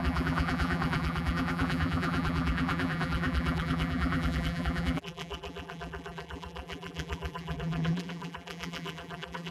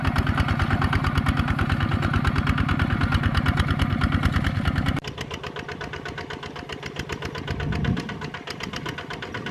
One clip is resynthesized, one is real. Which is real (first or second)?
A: second